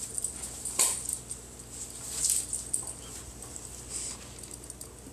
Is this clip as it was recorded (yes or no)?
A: yes